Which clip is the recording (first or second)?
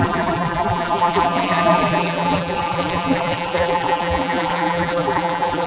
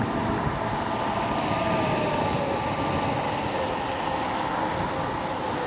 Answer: second